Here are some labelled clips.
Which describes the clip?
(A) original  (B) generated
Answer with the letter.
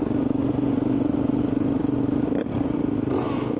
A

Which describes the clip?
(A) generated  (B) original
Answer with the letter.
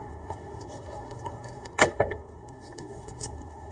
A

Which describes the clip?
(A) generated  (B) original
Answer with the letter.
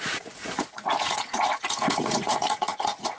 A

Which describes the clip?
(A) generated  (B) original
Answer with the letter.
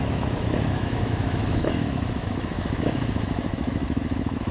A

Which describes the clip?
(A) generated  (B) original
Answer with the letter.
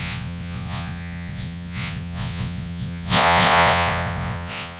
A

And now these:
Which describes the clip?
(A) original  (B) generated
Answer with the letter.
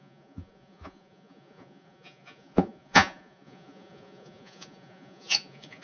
B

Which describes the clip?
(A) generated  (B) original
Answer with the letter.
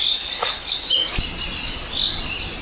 B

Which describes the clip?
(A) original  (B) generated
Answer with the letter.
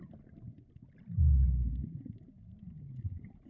A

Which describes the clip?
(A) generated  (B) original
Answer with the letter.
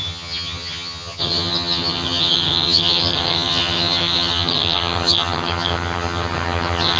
A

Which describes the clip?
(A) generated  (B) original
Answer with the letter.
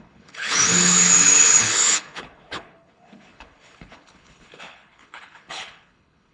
A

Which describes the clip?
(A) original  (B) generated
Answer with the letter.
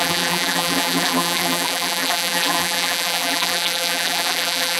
B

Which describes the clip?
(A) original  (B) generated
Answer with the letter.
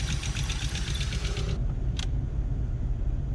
B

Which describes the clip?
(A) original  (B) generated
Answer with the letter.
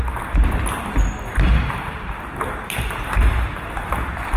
A